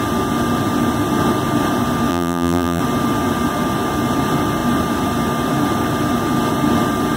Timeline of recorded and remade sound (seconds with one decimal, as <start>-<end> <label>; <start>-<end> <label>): 0.0-2.1 recorded; 2.1-2.8 remade; 2.8-7.2 recorded